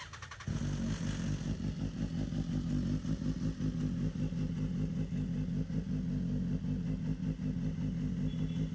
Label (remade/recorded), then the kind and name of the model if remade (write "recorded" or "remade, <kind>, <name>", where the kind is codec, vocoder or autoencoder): recorded